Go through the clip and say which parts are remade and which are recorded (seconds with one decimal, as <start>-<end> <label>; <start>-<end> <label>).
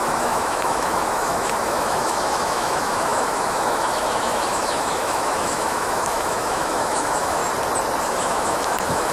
0.0-7.4 remade; 7.4-8.0 recorded; 8.0-9.1 remade